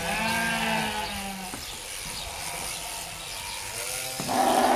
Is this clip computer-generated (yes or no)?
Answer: no